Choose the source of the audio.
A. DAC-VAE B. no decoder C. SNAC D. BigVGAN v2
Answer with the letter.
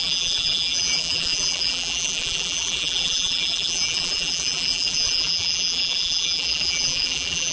D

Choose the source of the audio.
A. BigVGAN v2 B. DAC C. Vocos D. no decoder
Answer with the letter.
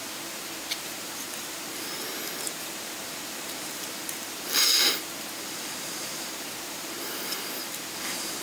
A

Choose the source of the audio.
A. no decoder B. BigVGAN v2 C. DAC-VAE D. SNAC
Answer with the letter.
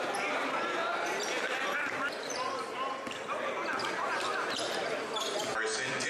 B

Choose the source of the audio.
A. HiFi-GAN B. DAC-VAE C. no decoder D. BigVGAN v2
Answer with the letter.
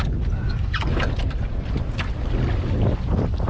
C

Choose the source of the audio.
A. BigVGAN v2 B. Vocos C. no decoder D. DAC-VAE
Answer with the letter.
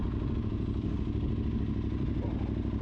C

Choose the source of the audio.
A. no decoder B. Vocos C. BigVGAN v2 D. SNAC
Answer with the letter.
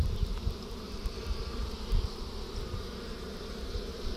C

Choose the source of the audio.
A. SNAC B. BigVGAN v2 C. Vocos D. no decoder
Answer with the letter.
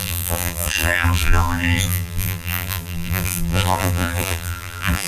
B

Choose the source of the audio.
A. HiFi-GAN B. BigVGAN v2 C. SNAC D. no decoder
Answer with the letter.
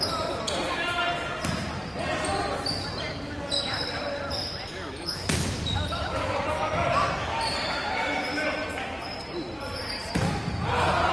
D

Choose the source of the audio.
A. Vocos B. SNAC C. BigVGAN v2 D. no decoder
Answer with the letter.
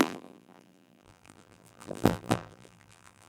C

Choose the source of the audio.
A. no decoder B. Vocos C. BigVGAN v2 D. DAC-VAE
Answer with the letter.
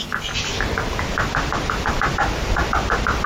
A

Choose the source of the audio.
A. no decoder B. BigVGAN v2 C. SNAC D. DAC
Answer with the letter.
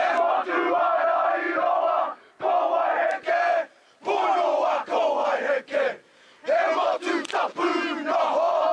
A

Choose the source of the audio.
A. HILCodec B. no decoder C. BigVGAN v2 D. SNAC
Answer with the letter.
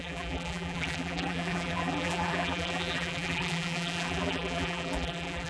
C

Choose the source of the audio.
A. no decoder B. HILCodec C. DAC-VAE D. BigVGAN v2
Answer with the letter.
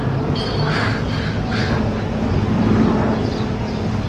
A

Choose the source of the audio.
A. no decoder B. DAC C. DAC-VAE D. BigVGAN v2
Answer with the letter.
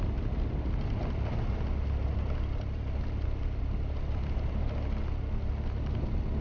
A